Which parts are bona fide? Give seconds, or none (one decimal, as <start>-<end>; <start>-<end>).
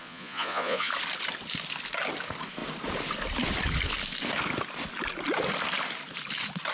0.9-6.7